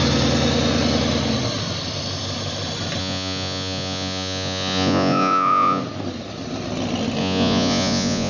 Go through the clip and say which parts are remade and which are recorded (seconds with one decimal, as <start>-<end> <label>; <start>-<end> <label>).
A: 0.0-3.0 recorded; 3.0-5.8 remade; 5.8-7.2 recorded; 7.2-8.3 remade

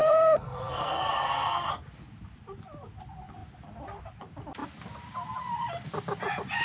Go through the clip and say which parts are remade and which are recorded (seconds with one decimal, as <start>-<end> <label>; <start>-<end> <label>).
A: 0.0-1.7 remade; 1.7-6.6 recorded

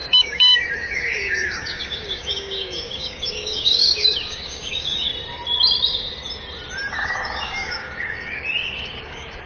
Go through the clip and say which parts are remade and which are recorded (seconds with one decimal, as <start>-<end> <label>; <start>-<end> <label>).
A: 0.0-5.1 remade; 5.1-6.9 recorded; 6.9-9.5 remade